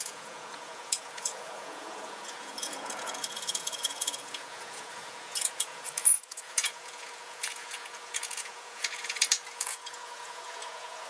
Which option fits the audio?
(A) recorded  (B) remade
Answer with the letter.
B